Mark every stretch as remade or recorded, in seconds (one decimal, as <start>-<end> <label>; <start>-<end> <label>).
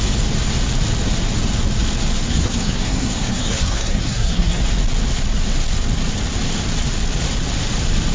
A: 0.0-2.3 recorded; 2.3-4.6 remade; 4.6-8.1 recorded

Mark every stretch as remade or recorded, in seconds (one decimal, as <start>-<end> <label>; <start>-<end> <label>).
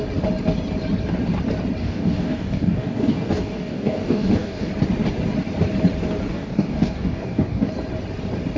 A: 0.0-1.8 recorded; 1.8-4.7 remade; 4.7-6.3 recorded; 6.3-7.7 remade; 7.7-8.6 recorded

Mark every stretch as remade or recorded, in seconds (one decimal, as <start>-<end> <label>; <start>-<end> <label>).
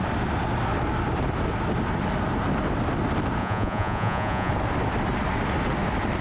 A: 0.0-3.4 recorded; 3.4-4.5 remade; 4.5-6.2 recorded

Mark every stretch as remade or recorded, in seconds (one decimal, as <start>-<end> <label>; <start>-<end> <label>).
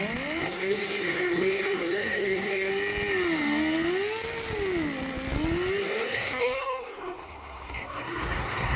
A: 0.0-0.4 recorded; 0.4-2.7 remade; 2.7-5.8 recorded; 5.8-8.8 remade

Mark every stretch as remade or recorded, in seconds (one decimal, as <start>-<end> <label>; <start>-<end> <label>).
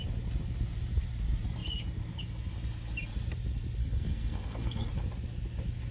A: 0.0-3.8 recorded; 3.8-4.9 remade; 4.9-5.9 recorded